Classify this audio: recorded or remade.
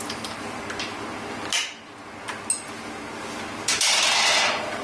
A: recorded